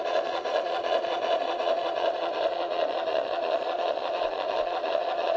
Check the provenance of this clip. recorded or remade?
remade